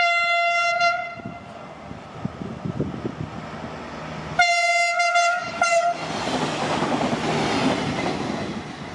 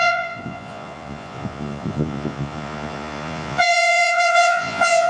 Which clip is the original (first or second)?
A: first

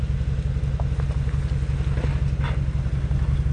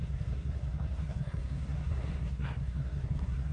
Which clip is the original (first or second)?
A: first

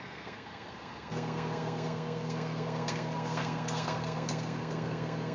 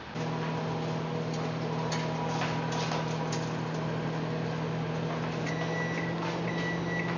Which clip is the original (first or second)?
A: second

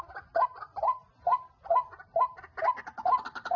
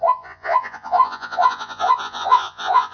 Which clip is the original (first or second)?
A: first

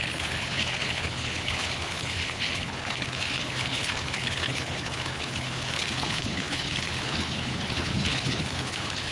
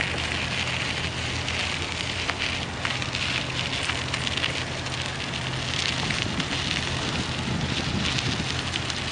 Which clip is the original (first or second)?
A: second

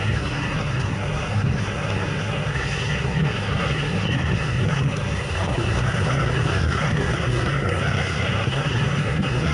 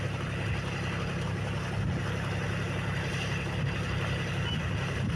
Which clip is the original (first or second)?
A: second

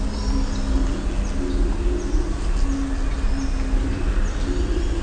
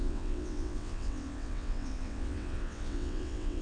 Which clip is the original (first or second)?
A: first